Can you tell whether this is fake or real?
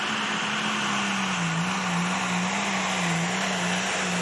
real